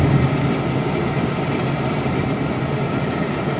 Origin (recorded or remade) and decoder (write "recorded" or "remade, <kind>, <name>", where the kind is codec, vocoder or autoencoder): recorded